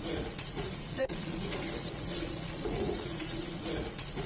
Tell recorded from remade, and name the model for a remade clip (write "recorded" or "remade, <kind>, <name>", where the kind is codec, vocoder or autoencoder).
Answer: remade, vocoder, Vocos